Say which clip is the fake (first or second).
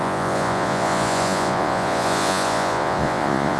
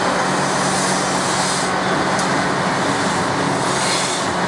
first